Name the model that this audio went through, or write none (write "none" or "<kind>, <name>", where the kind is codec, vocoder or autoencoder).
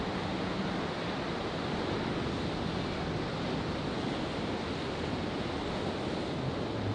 none